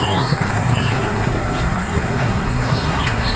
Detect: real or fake fake